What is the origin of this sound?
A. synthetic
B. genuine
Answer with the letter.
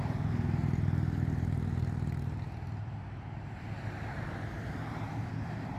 A